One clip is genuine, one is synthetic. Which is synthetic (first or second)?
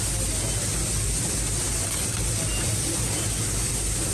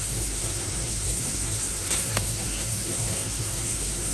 second